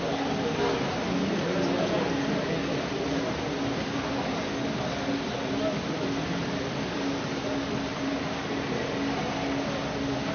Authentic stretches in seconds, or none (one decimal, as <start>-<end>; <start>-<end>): 0.0-7.9; 8.9-10.3